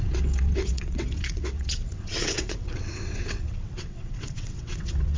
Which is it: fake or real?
fake